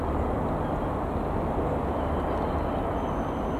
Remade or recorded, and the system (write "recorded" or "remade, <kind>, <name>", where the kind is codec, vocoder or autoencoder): recorded